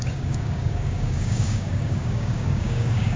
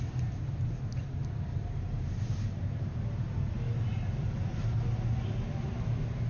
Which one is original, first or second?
second